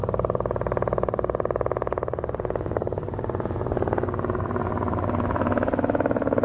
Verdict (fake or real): real